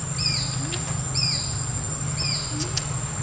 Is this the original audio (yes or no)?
yes